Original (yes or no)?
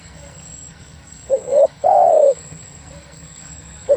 no